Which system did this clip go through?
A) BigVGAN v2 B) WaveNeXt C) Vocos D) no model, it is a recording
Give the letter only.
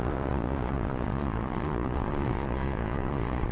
C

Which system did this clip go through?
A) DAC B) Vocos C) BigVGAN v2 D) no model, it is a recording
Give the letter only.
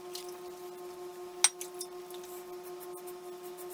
D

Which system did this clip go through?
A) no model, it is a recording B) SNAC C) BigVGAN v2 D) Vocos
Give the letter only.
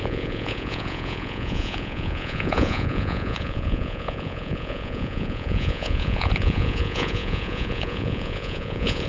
D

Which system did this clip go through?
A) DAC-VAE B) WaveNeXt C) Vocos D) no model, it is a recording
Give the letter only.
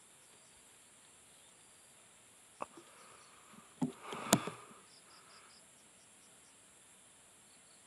D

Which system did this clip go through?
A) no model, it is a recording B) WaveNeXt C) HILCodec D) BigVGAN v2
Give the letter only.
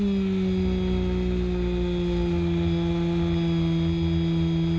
A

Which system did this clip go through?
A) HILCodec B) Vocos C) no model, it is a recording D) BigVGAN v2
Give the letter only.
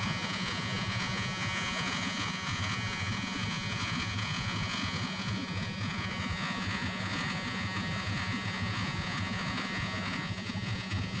B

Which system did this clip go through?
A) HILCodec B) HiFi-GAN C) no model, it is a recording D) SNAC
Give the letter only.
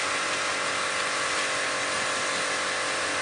C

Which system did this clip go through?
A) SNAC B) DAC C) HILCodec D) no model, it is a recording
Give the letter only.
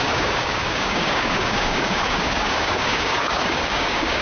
B